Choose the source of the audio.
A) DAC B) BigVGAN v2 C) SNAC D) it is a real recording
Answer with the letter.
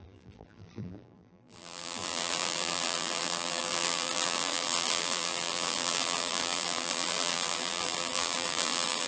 B